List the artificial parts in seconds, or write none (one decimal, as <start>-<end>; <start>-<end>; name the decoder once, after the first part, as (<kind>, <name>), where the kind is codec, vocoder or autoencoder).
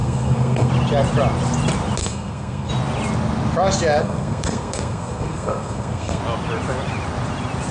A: 0.0-0.7 (codec, SNAC); 2.0-2.7; 4.0-6.2